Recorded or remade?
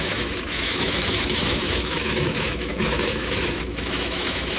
remade